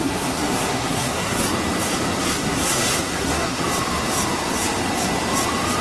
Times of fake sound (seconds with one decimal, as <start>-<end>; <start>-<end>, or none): 0.0-1.5; 2.2-3.6